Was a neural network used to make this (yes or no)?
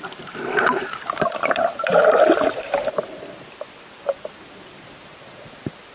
no